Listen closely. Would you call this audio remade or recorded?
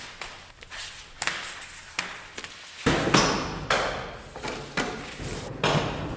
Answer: recorded